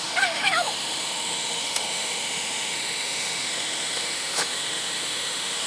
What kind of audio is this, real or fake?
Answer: fake